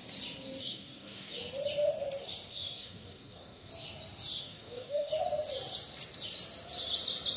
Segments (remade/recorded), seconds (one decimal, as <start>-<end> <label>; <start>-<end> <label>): 0.0-0.6 recorded; 0.6-1.4 remade; 1.4-2.5 recorded; 2.5-3.7 remade; 3.7-4.4 recorded; 4.4-5.1 remade; 5.1-7.4 recorded